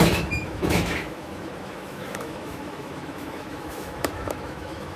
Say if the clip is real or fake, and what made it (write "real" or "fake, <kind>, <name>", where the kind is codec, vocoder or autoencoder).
fake, autoencoder, DAC-VAE